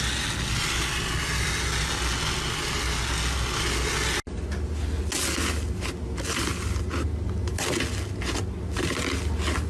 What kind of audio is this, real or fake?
real